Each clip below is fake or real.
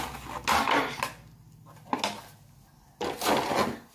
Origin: real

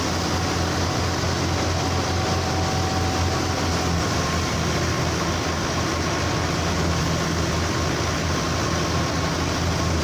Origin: real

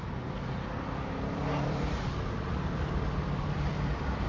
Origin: fake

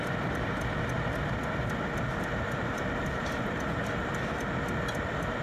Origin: fake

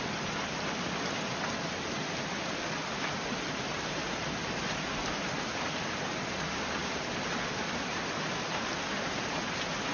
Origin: real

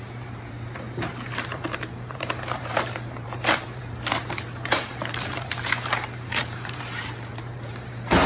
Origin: fake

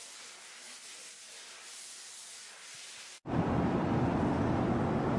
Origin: fake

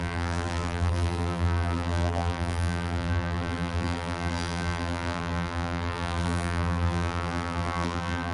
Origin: fake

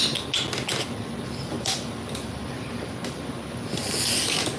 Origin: real